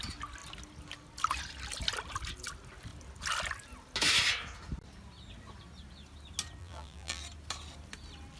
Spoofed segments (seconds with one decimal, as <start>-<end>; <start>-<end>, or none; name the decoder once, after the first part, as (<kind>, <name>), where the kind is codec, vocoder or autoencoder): 6.6-7.2 (vocoder, BigVGAN v2)